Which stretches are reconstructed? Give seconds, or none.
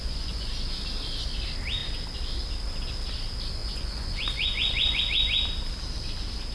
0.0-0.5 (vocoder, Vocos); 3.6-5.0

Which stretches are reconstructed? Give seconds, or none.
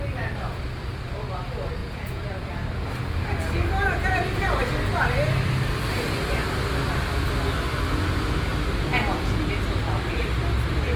1.8-2.5 (vocoder, Vocos); 8.9-9.5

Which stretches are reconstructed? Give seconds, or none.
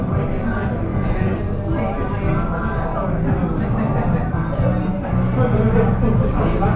0.9-1.4 (vocoder, Vocos)